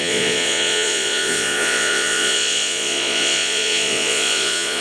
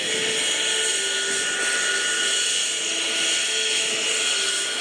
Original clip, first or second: second